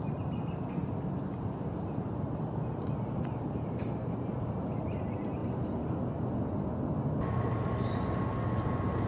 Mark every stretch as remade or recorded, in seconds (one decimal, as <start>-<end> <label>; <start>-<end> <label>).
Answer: 0.0-0.8 recorded; 0.8-4.3 remade; 4.3-9.1 recorded